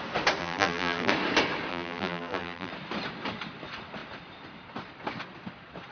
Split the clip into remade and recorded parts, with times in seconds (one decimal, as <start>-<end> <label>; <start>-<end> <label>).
0.0-0.4 recorded; 0.4-1.1 remade; 1.1-1.7 recorded; 1.7-2.7 remade; 2.7-5.9 recorded